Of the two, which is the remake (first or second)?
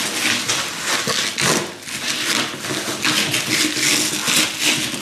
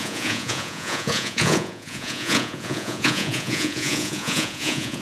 second